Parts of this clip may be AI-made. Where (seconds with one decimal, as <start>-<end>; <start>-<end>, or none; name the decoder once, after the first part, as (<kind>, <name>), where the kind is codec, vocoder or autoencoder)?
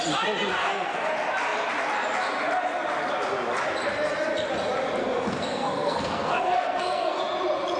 0.6-1.1 (codec, SNAC); 5.0-7.2